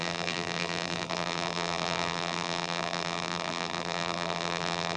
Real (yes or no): no